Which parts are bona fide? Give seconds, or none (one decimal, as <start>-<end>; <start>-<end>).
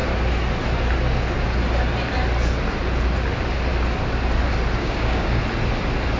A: 0.0-4.8; 5.4-6.2